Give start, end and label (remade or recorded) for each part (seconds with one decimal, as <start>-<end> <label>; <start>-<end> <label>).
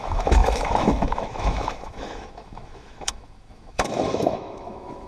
0.0-5.1 remade